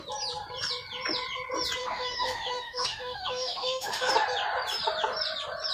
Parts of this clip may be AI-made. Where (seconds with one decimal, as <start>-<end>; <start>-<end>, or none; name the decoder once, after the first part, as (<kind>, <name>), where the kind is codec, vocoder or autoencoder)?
1.8-4.1 (autoencoder, DAC-VAE)